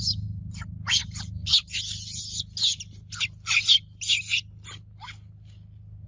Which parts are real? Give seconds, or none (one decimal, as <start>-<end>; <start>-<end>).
0.0-6.1